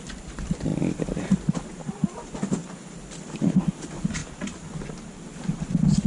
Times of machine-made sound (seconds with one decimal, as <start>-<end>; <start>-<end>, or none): none